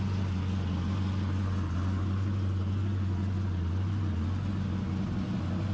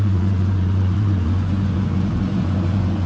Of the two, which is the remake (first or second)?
second